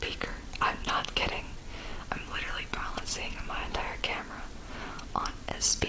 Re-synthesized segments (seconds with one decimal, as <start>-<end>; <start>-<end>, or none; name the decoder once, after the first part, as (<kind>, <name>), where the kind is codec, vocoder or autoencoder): 0.0-5.9 (vocoder, WaveNeXt)